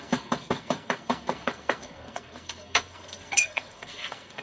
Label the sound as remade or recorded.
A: remade